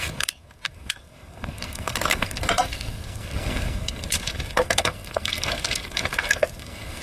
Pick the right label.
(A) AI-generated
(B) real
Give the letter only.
A